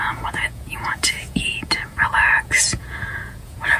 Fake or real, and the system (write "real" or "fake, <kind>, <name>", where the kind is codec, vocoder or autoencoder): fake, vocoder, Vocos